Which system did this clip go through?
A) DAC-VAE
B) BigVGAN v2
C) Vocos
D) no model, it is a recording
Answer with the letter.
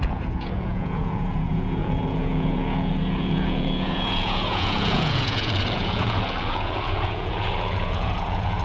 C